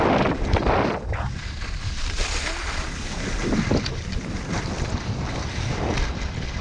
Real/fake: real